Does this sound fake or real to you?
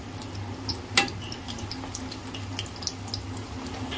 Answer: real